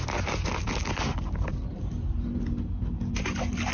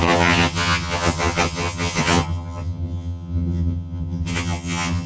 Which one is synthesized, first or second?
second